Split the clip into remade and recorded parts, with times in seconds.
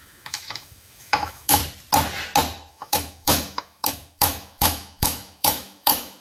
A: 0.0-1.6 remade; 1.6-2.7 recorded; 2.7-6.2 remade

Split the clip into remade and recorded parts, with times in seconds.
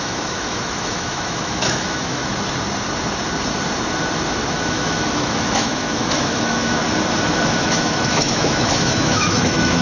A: 0.0-2.2 remade; 2.2-4.7 recorded; 4.7-6.8 remade; 6.8-7.6 recorded; 7.6-9.8 remade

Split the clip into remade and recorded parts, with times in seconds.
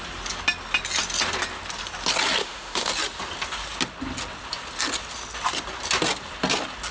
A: 0.0-2.4 recorded; 2.4-2.9 remade; 2.9-6.9 recorded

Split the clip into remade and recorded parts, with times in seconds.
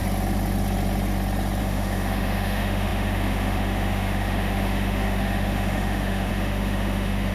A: 0.0-1.6 recorded; 1.6-7.3 remade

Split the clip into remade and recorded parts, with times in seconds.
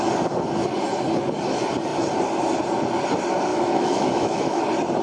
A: 0.0-3.5 recorded; 3.5-4.6 remade; 4.6-5.0 recorded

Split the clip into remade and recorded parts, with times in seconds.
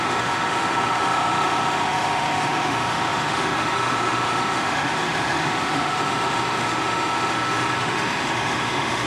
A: 0.0-9.1 remade